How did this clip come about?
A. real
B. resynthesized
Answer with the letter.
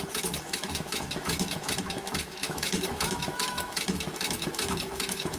B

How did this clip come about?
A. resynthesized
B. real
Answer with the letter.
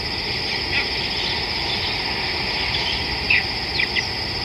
B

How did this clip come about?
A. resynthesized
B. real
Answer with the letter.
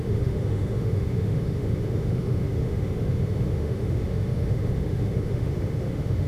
A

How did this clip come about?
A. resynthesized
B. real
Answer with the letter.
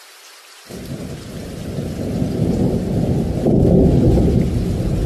B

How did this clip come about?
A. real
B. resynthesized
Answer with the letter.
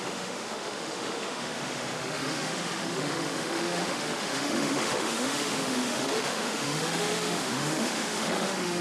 B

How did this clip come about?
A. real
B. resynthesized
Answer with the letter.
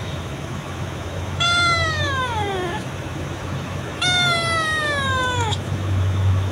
B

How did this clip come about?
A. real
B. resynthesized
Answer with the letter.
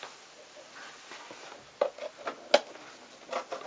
A